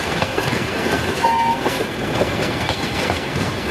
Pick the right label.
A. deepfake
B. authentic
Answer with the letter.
A